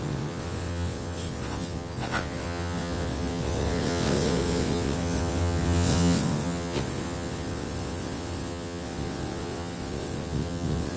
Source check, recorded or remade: remade